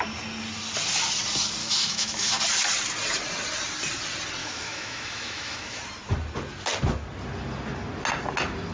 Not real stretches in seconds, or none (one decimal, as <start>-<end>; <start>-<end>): 1.6-2.3; 4.4-5.8

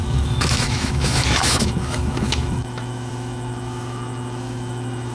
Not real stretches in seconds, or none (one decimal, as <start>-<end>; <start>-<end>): 0.0-5.1